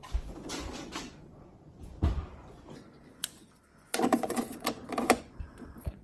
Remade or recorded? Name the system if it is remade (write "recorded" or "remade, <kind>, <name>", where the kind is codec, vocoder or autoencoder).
remade, vocoder, Vocos